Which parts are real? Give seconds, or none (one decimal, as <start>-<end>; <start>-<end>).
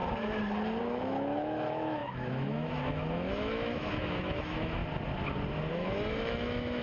0.0-0.8; 4.8-5.7